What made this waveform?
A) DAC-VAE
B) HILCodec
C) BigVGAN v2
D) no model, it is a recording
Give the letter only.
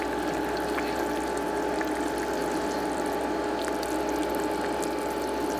D